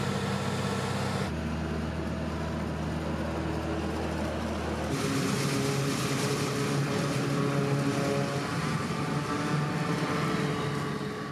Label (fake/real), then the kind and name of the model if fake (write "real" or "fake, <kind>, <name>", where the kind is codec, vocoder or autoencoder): real